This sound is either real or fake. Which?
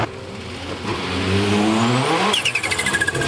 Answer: real